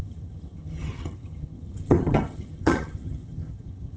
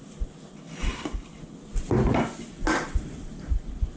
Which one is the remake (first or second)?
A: first